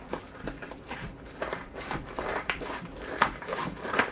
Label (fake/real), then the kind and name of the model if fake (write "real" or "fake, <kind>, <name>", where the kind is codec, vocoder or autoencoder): fake, vocoder, BigVGAN v2